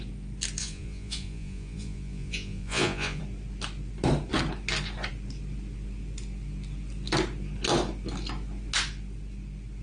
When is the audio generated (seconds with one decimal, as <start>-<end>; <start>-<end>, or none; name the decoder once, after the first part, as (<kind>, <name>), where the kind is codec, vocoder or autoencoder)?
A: 0.6-3.2 (vocoder, Vocos)